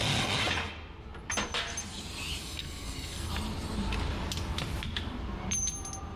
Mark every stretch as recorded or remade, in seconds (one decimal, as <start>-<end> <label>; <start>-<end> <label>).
0.0-2.4 recorded; 2.4-3.3 remade; 3.3-6.2 recorded